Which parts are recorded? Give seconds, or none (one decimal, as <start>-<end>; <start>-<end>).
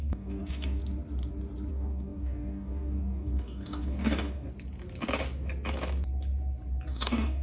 0.8-1.7; 4.5-6.9